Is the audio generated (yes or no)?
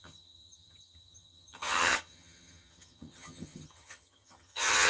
yes